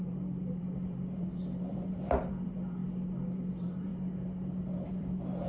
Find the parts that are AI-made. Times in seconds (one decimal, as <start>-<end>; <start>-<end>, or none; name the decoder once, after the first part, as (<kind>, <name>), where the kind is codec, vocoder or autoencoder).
0.0-2.8 (vocoder, BigVGAN v2); 3.5-3.9; 5.0-5.5